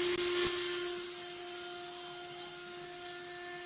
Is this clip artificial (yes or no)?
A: no